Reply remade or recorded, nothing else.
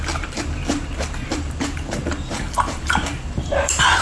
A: remade